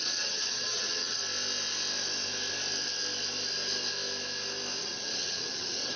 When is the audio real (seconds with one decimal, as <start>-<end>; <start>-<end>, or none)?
1.2-4.8